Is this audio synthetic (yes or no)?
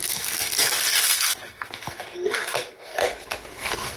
yes